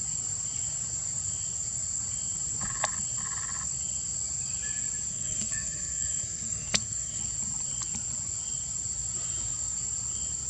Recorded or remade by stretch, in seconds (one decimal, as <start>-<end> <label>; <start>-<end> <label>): 0.0-5.1 recorded; 5.1-7.2 remade; 7.2-10.5 recorded